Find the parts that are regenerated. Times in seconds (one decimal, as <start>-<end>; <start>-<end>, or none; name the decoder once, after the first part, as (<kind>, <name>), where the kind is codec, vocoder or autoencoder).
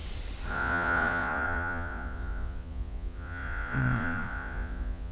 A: 0.5-5.1 (vocoder, Vocos)